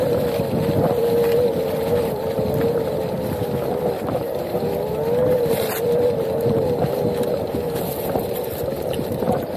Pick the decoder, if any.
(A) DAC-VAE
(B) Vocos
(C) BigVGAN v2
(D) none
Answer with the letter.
C